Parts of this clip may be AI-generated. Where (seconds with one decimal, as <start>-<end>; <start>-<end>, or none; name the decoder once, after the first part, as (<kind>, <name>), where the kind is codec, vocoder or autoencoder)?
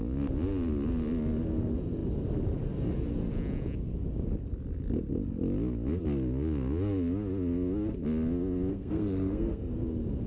8.7-9.7 (codec, SNAC)